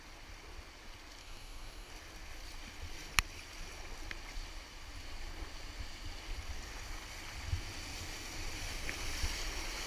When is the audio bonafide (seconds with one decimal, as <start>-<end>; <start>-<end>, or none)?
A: 0.0-1.2; 1.9-9.9